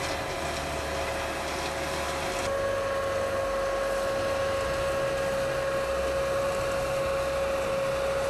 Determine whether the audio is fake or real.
real